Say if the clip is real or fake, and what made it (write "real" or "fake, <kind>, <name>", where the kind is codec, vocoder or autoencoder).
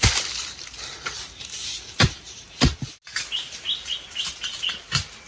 real